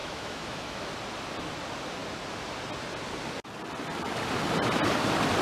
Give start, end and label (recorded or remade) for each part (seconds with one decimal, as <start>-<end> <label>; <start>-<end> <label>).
0.0-0.9 remade; 0.9-5.4 recorded